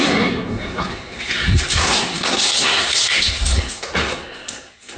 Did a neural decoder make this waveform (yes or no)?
yes